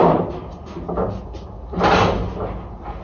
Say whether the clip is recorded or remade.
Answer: recorded